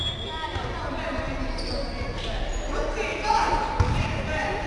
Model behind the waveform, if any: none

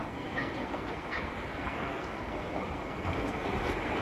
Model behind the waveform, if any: codec, SNAC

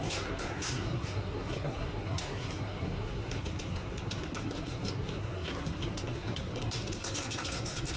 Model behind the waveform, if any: codec, SNAC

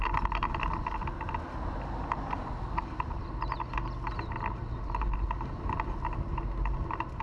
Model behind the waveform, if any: none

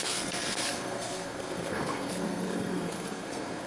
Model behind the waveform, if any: codec, SNAC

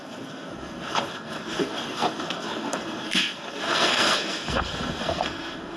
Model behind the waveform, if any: codec, SNAC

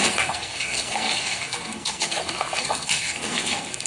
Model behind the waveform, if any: codec, SNAC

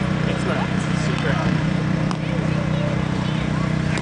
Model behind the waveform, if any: none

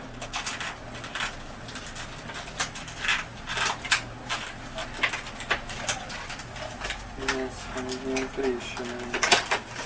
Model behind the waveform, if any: none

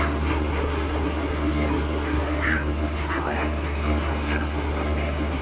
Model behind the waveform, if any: codec, SNAC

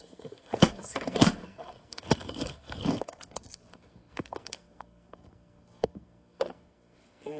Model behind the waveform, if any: codec, SNAC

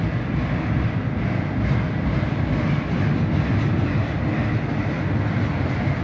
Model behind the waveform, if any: none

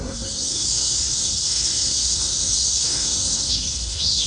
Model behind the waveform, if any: codec, SNAC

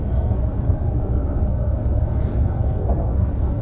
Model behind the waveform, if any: codec, SNAC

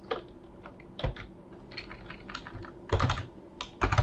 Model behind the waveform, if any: none